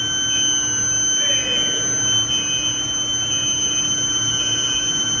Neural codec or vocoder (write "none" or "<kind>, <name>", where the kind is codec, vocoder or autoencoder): none